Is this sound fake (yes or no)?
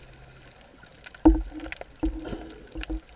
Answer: no